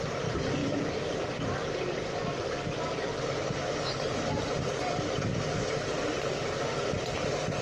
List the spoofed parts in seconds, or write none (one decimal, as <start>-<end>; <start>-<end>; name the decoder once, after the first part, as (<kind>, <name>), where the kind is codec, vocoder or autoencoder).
0.6-1.1 (autoencoder, DAC-VAE)